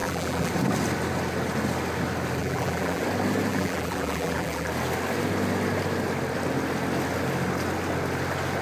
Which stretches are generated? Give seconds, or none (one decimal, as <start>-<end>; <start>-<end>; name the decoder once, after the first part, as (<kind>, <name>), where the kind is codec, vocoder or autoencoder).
0.0-0.5 (vocoder, BigVGAN v2); 2.4-3.0; 3.5-4.7